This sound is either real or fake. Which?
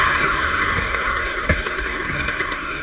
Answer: fake